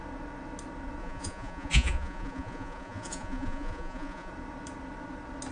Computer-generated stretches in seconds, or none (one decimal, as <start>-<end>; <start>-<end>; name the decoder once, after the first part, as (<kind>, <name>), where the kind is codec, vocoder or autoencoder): 1.0-4.3 (vocoder, Vocos)